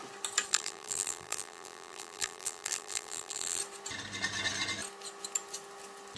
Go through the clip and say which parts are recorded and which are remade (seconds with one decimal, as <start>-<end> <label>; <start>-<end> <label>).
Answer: 0.0-0.5 recorded; 0.5-3.6 remade; 3.6-6.2 recorded